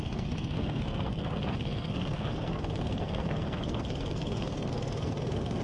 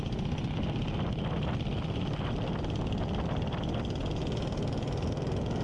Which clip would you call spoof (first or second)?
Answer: first